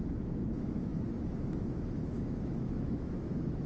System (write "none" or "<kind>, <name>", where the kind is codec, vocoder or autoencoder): autoencoder, DAC-VAE